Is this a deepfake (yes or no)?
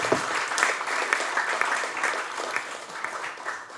yes